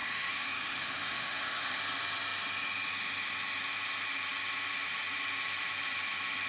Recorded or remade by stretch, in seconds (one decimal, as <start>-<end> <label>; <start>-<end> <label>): 0.0-1.8 remade; 1.8-6.5 recorded